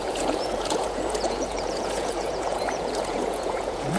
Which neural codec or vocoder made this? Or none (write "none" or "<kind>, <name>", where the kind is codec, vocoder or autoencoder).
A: vocoder, Vocos